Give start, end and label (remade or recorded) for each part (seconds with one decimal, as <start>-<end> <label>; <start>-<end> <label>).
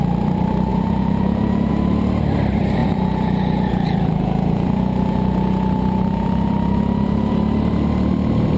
0.0-0.7 recorded; 0.7-1.7 remade; 1.7-2.8 recorded; 2.8-7.4 remade; 7.4-8.6 recorded